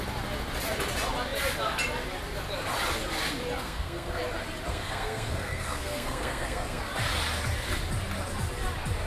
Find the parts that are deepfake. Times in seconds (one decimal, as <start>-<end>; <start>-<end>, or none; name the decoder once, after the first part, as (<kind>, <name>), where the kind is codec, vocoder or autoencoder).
3.6-4.2 (codec, SNAC); 4.7-6.8